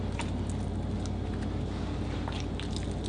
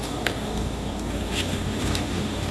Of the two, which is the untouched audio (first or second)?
first